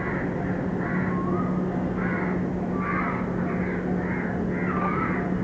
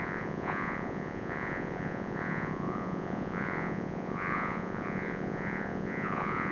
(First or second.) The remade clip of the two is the second